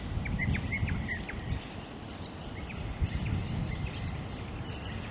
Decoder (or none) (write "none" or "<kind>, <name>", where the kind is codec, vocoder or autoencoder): none